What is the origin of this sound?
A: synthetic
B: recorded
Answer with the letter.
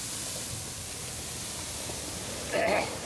B